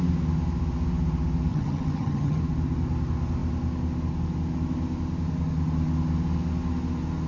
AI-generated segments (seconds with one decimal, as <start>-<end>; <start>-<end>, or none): 1.5-2.4